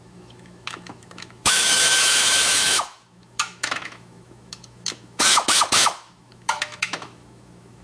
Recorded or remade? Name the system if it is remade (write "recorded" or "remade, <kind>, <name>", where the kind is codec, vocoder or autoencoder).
remade, autoencoder, DAC-VAE